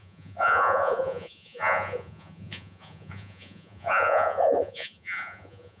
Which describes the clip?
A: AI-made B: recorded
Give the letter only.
A